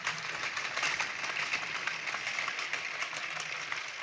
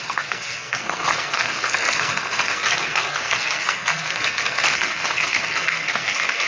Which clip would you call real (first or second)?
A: first